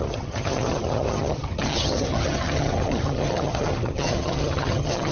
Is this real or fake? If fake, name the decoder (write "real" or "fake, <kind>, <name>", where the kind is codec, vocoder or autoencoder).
fake, vocoder, HiFi-GAN